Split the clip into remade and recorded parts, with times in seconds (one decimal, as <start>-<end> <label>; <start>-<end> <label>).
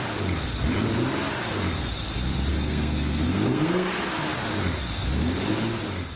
0.0-2.5 recorded; 2.5-3.9 remade; 3.9-6.2 recorded